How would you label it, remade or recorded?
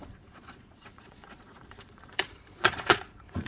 remade